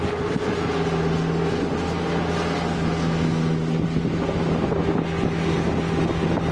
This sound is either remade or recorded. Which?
recorded